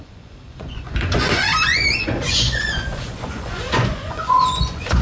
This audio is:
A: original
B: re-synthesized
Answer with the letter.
B